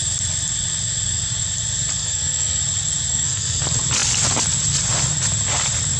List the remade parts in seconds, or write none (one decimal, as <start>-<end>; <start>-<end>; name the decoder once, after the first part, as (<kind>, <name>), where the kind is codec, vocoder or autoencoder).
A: 2.0-2.6 (codec, SNAC); 3.1-3.6